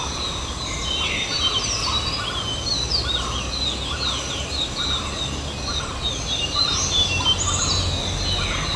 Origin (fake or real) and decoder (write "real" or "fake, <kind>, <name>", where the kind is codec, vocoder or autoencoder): real